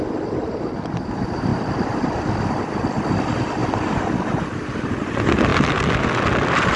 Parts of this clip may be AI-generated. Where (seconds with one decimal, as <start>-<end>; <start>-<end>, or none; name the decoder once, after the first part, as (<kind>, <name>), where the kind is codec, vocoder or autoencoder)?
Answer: 1.5-2.7 (vocoder, BigVGAN v2); 5.5-6.8